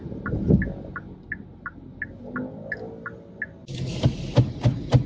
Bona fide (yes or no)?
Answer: yes